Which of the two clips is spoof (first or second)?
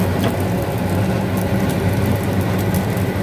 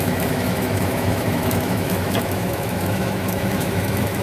second